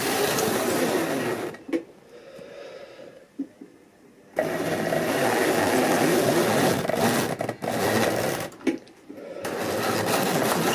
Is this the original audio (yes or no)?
yes